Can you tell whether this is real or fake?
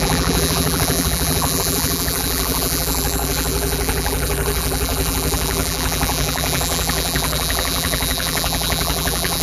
fake